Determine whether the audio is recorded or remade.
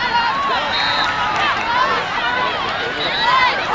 remade